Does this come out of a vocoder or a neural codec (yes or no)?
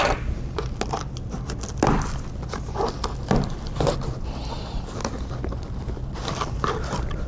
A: no